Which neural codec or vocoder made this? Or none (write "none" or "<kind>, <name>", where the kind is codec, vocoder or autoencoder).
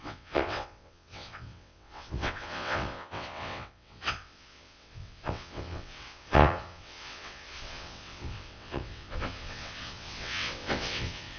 vocoder, WaveNeXt